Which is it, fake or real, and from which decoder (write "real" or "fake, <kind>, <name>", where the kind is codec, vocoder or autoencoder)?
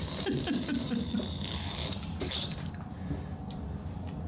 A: fake, vocoder, BigVGAN v2